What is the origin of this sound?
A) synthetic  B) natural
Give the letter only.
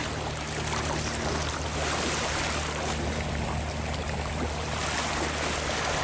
B